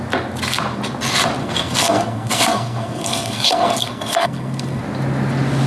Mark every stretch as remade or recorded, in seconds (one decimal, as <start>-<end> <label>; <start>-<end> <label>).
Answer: 0.0-1.4 recorded; 1.4-4.8 remade; 4.8-5.7 recorded

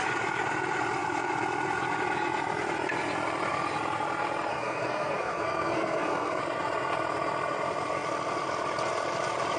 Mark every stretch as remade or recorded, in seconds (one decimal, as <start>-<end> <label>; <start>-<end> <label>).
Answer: 0.0-4.5 recorded; 4.5-6.4 remade; 6.4-9.6 recorded

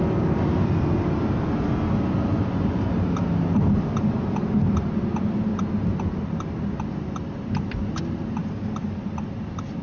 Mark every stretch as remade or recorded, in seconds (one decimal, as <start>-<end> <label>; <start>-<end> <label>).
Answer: 0.0-9.8 recorded